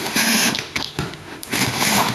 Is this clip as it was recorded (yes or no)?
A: no